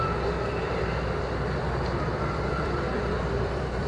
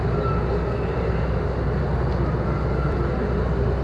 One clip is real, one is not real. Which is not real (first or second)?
first